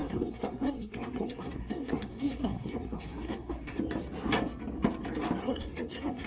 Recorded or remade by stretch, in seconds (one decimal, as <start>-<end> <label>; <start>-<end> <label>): 0.0-3.8 remade; 3.8-5.4 recorded; 5.4-6.3 remade